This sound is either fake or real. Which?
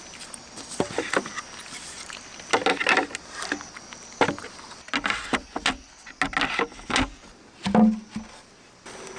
real